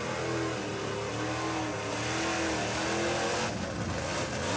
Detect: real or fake real